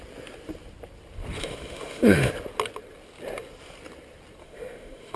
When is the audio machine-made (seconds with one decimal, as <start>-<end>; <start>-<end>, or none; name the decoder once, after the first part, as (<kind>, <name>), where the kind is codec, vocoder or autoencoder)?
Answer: 1.4-2.3 (autoencoder, DAC-VAE); 4.4-5.2